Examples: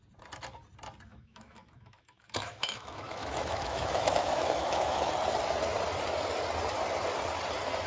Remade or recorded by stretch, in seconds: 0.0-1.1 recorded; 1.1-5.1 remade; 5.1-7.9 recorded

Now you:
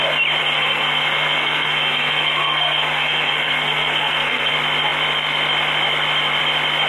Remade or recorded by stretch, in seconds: 0.0-0.4 recorded; 0.4-4.5 remade; 4.5-6.9 recorded

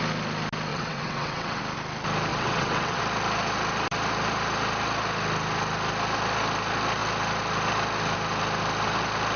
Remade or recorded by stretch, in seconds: 0.0-0.7 recorded; 0.7-1.6 remade; 1.6-2.3 recorded; 2.3-3.0 remade; 3.0-9.4 recorded